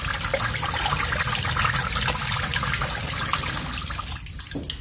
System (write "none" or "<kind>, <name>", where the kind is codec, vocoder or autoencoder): none